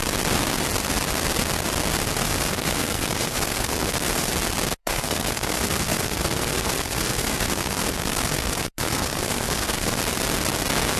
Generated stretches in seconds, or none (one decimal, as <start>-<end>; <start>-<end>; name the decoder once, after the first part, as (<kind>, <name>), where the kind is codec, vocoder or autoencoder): 2.2-4.3 (codec, SNAC); 4.8-10.0